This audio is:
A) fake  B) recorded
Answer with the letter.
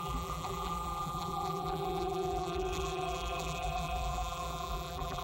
A